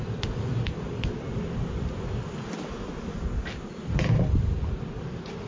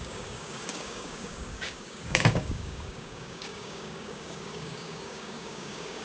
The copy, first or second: second